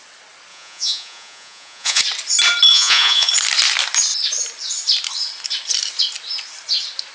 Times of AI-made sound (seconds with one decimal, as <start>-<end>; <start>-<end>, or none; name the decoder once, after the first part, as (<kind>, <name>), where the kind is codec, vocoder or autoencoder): 0.5-2.0 (vocoder, Vocos); 2.7-3.3